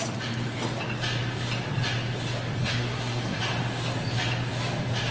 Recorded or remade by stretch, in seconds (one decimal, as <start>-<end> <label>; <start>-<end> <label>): 0.0-2.6 recorded; 2.6-3.4 remade; 3.4-5.1 recorded